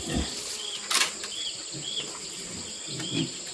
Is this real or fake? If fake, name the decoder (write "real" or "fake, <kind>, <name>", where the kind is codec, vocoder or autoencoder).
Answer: real